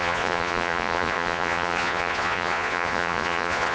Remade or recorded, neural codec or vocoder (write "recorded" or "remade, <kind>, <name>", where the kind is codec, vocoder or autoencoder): remade, vocoder, Vocos